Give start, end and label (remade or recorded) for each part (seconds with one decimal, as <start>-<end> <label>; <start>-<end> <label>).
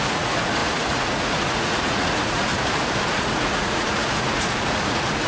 0.0-2.5 remade; 2.5-3.1 recorded; 3.1-5.3 remade